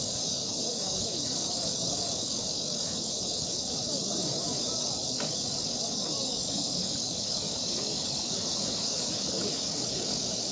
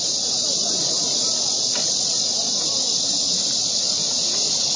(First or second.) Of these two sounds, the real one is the second